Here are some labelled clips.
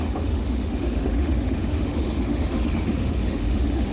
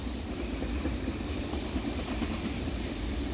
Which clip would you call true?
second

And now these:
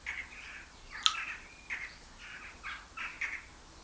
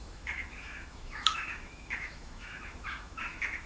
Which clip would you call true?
first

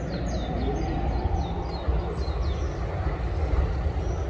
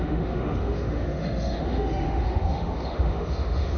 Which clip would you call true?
first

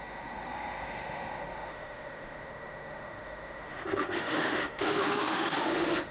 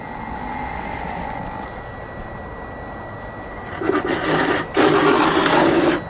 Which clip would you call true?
second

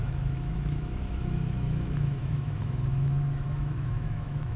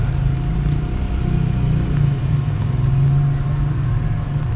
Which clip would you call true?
second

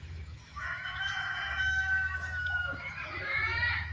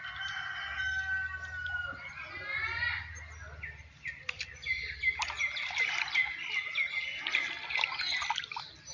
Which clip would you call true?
second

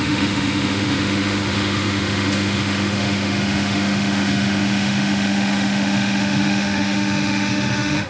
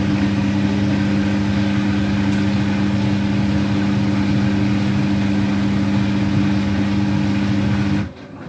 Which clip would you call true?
second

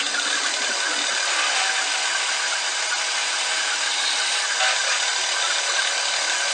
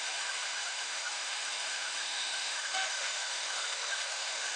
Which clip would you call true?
first